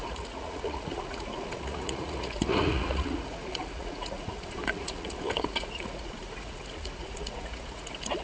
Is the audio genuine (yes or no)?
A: no